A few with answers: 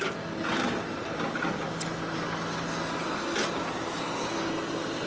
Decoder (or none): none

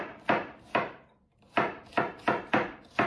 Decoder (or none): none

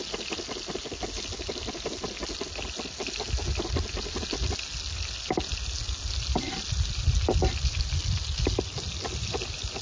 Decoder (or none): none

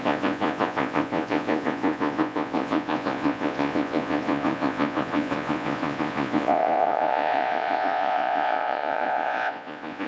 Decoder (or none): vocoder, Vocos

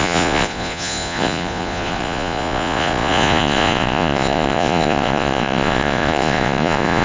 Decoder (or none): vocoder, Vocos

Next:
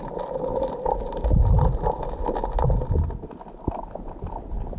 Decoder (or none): none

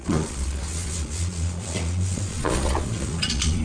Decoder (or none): vocoder, Vocos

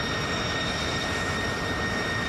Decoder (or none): none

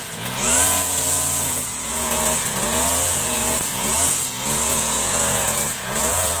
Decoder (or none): vocoder, Vocos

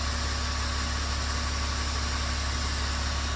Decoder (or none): none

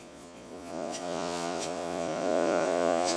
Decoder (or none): vocoder, Vocos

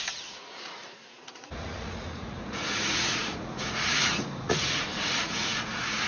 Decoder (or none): vocoder, Vocos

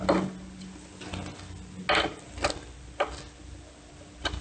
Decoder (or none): none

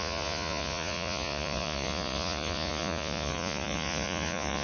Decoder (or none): vocoder, Vocos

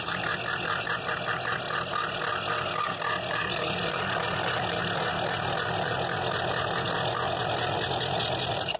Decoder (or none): none